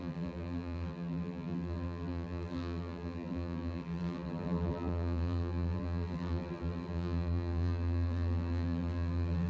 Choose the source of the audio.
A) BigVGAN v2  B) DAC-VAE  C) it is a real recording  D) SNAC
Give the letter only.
A